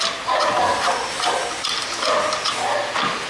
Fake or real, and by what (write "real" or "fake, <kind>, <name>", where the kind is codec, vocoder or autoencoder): real